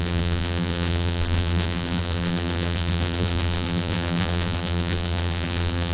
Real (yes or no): no